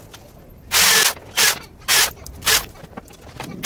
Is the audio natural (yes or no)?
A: yes